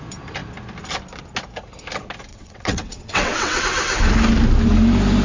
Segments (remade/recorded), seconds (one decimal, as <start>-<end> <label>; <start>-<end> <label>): 0.0-2.3 recorded; 2.3-3.6 remade; 3.6-5.2 recorded